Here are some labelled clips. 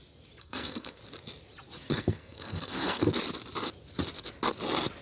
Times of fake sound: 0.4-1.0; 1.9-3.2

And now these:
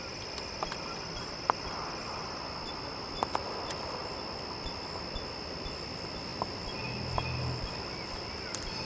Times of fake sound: none

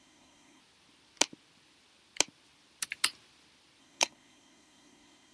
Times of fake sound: 0.0-0.6; 3.8-5.3

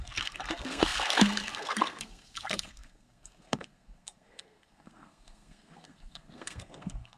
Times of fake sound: 0.0-7.2

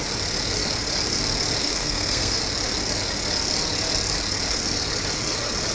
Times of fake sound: 1.6-2.4

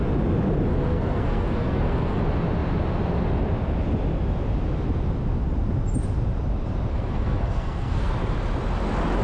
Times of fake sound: 0.7-2.2; 6.9-8.1